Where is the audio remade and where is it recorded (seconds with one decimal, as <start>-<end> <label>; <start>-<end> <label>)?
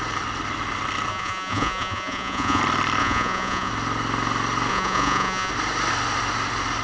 0.0-1.1 recorded; 1.1-2.6 remade; 2.6-3.0 recorded; 3.0-3.7 remade; 3.7-4.7 recorded; 4.7-5.5 remade; 5.5-6.8 recorded